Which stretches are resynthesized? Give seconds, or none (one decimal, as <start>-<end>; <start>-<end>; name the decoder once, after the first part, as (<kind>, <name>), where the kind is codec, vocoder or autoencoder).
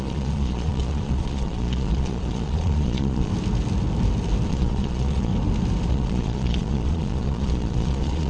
0.0-3.3 (vocoder, Vocos); 4.5-5.3; 5.9-8.3